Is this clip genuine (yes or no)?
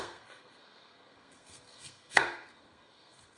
no